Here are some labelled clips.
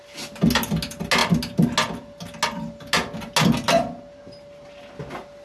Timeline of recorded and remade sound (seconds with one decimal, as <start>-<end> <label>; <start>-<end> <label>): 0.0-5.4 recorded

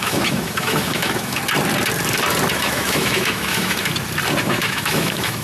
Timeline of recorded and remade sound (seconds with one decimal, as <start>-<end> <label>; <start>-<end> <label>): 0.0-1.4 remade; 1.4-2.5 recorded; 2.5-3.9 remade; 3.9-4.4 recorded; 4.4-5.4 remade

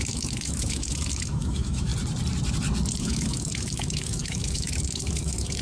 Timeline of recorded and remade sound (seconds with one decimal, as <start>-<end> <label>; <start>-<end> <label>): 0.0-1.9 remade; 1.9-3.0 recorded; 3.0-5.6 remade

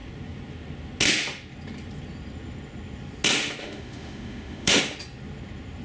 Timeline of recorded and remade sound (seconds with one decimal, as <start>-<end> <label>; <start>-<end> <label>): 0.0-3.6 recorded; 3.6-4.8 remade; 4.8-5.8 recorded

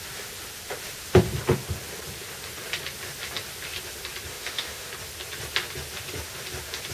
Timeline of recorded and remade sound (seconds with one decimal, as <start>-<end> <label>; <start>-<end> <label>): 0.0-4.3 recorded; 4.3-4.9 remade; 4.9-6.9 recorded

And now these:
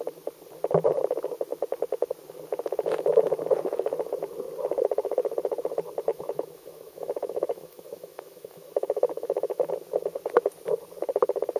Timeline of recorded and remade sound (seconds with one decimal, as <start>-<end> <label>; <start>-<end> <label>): 0.0-6.1 recorded; 6.1-9.7 remade; 9.7-11.6 recorded

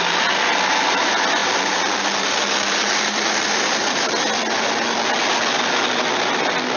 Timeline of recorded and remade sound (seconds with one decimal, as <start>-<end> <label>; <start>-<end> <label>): 0.0-6.8 recorded

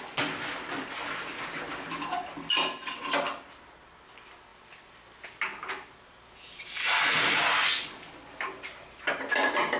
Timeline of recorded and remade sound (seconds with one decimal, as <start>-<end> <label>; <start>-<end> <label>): 0.0-9.8 recorded